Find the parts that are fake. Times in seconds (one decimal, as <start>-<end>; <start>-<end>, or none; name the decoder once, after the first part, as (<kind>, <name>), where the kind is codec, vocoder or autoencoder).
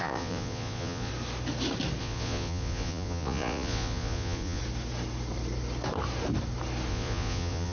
0.0-1.1 (vocoder, Vocos); 2.0-4.6; 6.9-7.7